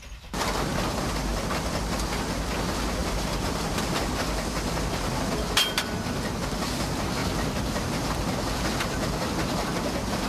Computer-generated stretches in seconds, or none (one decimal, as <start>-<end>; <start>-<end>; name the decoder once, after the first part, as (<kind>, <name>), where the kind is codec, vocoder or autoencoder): 1.3-1.8 (vocoder, BigVGAN v2); 3.0-4.0; 7.2-8.1